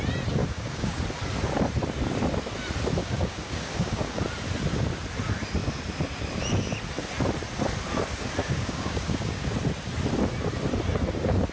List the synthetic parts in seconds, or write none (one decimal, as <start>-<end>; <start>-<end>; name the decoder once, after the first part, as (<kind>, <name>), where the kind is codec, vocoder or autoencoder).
0.4-1.0 (codec, DAC); 3.0-4.2; 8.4-9.5